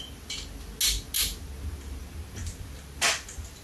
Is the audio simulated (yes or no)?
no